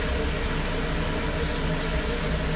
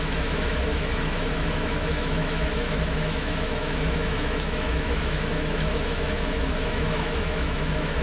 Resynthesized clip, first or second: second